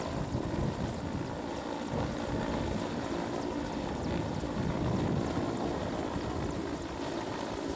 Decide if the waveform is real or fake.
real